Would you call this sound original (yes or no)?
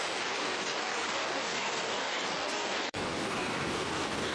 no